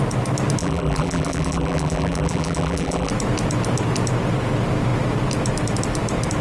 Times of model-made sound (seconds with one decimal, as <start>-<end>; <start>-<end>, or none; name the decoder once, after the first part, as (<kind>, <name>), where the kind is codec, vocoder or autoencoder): 0.6-3.1 (vocoder, BigVGAN v2)